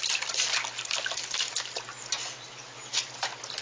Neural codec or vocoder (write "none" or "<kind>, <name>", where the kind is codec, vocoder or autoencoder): none